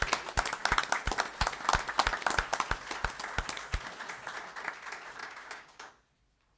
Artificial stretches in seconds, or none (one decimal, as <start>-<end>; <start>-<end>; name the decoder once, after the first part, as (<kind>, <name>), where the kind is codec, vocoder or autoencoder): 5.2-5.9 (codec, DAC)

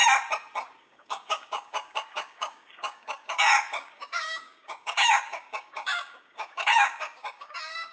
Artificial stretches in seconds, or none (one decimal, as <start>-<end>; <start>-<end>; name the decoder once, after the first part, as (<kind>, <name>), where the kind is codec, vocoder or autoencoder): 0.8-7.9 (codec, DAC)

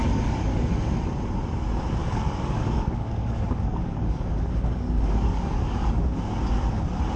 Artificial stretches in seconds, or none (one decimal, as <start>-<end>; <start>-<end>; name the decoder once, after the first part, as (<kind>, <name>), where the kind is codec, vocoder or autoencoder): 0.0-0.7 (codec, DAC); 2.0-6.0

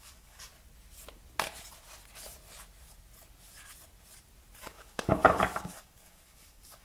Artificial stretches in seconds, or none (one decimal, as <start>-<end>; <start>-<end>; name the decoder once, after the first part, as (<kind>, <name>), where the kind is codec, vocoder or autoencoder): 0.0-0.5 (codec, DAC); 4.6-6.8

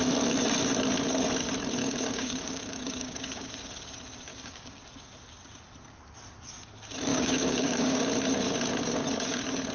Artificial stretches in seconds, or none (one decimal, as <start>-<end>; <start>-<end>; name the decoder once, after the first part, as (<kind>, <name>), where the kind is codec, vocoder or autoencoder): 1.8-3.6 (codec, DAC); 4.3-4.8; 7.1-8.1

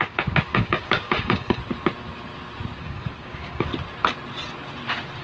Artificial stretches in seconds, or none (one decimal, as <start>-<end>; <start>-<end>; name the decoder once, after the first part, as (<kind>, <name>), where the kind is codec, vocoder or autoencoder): 0.0-1.6 (codec, DAC); 2.8-3.7

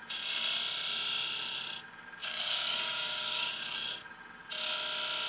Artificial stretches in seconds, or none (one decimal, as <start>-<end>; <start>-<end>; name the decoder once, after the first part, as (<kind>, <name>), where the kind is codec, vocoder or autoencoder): 2.2-3.5 (codec, DAC)